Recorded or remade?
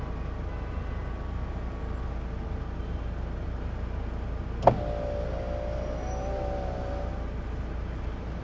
recorded